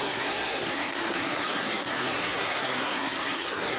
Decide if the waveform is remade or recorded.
remade